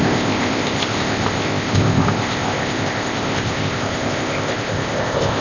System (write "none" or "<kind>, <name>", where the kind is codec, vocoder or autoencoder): codec, ZipCodec